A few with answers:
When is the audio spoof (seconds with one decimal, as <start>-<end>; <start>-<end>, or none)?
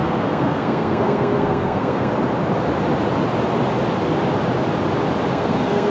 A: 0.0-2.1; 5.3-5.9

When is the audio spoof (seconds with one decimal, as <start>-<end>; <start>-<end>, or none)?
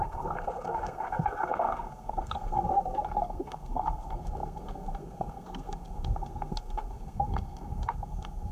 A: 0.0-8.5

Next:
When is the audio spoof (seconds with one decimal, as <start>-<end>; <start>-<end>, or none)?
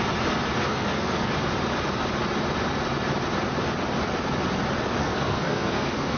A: 0.6-1.3; 5.0-6.2